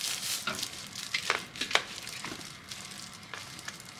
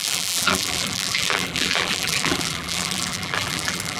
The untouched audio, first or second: first